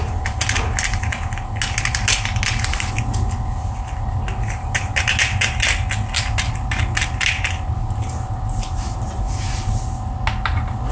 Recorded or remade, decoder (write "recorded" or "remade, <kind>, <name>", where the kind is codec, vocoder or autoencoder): recorded